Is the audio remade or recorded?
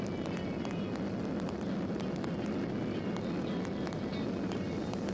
remade